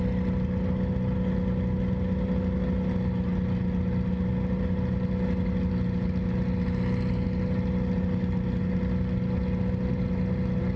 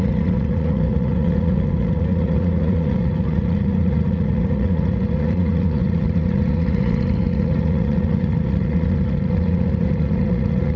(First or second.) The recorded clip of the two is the first